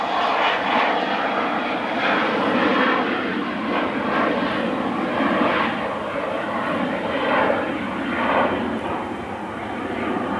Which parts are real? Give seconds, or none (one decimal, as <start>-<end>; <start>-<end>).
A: 0.0-2.7; 4.7-10.4